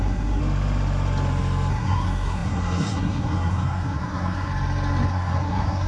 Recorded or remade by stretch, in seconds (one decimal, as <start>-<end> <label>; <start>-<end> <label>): 0.0-0.4 remade; 0.4-1.7 recorded; 1.7-4.5 remade; 4.5-5.1 recorded; 5.1-5.9 remade